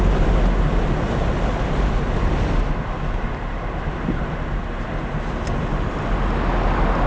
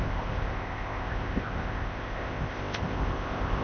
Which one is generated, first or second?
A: second